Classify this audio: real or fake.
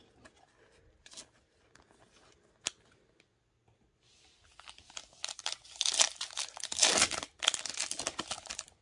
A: real